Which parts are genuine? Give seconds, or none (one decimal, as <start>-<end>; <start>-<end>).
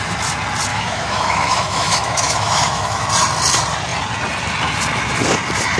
0.0-0.7; 3.1-5.8